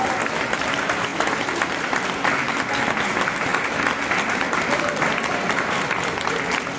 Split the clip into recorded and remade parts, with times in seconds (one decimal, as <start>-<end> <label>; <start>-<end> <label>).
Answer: 0.0-6.8 recorded